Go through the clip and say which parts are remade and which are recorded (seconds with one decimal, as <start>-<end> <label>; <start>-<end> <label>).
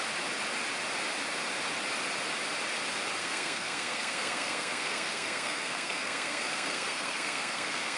0.0-3.2 recorded; 3.2-8.0 remade